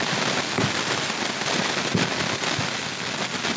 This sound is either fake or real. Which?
real